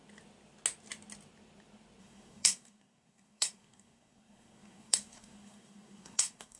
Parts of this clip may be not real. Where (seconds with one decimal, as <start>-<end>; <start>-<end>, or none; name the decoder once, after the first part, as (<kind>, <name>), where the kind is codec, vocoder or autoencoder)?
2.0-6.6 (codec, SNAC)